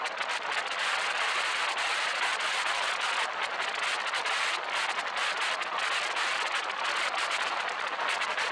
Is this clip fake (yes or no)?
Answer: no